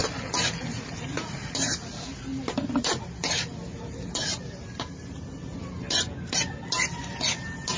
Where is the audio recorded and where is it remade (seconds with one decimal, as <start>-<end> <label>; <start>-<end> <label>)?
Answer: 0.0-7.8 recorded